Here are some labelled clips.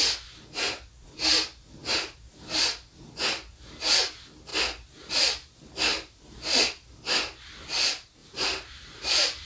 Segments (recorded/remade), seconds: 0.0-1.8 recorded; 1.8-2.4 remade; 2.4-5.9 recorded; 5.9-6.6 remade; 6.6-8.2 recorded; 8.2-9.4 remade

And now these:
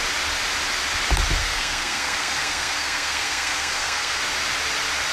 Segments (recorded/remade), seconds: 0.0-1.4 recorded; 1.4-4.2 remade; 4.2-5.1 recorded

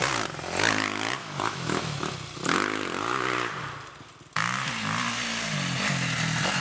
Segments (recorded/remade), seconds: 0.0-1.2 recorded; 1.2-2.1 remade; 2.1-6.6 recorded

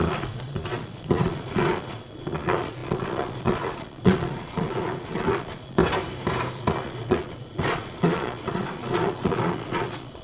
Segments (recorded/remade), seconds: 0.0-5.8 remade; 5.8-6.5 recorded; 6.5-10.2 remade

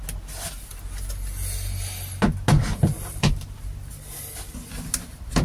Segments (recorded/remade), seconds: 0.0-5.4 recorded

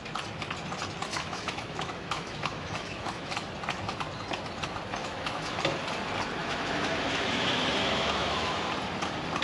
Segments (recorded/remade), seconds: 0.0-1.1 recorded; 1.1-3.3 remade; 3.3-5.0 recorded; 5.0-5.6 remade; 5.6-6.4 recorded; 6.4-8.7 remade; 8.7-9.4 recorded